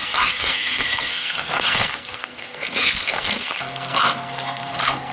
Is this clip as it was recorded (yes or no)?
no